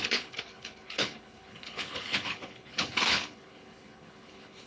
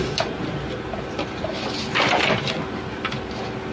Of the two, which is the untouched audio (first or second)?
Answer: second